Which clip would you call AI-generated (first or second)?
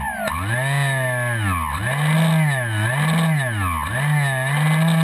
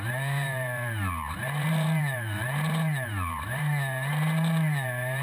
second